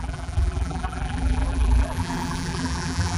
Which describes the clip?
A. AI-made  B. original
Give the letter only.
A